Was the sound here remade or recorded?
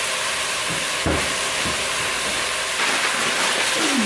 recorded